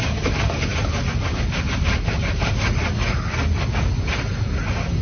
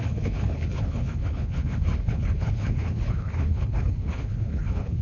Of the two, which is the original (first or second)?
first